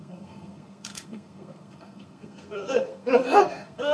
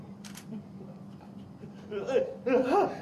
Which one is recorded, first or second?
second